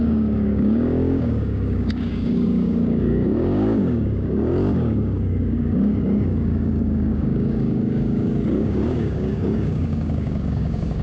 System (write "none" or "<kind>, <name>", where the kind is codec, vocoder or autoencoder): codec, DAC